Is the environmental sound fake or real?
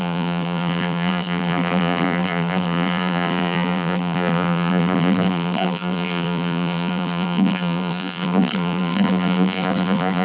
fake